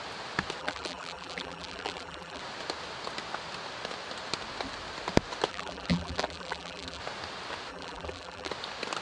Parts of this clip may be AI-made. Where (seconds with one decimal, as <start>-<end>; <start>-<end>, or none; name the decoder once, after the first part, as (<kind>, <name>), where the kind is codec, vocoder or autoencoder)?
0.6-2.4 (vocoder, BigVGAN v2); 5.5-7.0; 7.7-8.5